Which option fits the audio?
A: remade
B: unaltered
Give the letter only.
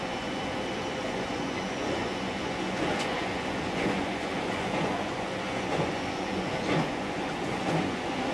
A